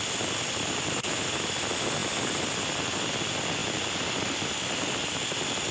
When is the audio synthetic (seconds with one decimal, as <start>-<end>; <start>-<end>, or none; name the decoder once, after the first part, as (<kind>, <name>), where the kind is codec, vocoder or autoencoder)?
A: none